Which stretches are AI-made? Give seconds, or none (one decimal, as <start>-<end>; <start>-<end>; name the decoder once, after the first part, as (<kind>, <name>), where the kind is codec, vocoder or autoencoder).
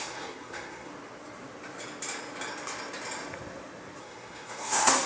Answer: 0.0-0.9 (codec, SNAC); 4.0-5.1